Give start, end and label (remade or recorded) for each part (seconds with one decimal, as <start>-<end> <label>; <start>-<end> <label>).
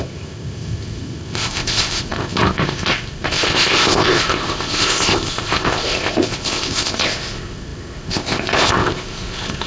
0.0-9.7 remade